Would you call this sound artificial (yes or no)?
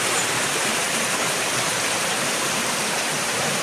yes